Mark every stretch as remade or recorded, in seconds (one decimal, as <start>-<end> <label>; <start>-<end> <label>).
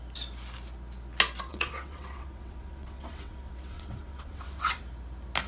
0.0-1.5 recorded; 1.5-4.8 remade; 4.8-5.5 recorded